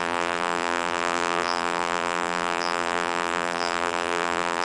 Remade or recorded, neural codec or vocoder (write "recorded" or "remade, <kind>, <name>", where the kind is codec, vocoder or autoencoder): remade, vocoder, BigVGAN v2